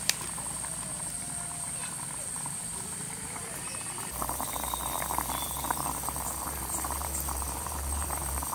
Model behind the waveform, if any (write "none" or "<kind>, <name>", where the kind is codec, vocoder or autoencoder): vocoder, BigVGAN v2